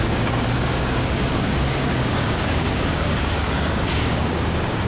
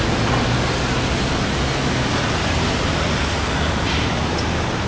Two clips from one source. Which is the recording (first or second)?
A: second